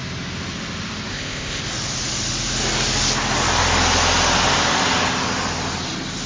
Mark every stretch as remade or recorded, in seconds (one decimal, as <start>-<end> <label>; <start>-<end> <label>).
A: 0.0-1.1 recorded; 1.1-1.6 remade; 1.6-6.3 recorded

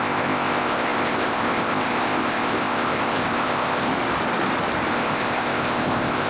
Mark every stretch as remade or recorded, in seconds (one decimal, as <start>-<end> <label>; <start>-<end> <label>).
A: 0.0-3.9 remade; 3.9-4.9 recorded; 4.9-6.3 remade